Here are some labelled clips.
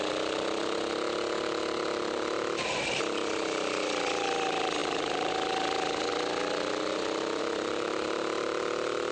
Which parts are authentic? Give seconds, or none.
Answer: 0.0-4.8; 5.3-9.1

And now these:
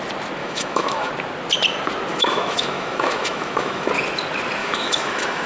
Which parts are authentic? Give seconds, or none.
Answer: 0.0-0.4; 1.1-2.1; 3.9-4.6

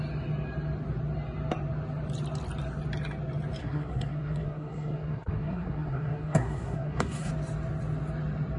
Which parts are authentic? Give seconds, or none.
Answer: 0.0-3.6; 7.3-8.6

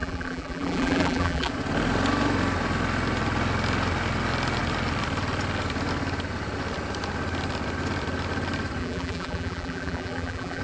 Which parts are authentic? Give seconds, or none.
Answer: 1.5-8.8

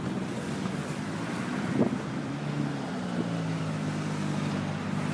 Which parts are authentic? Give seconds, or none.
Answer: 0.0-1.5; 2.3-5.1

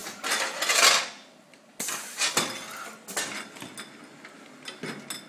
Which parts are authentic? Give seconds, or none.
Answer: 0.0-5.3

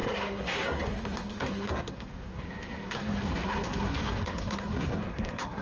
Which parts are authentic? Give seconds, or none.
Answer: none